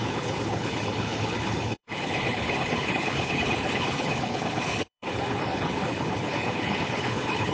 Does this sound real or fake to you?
fake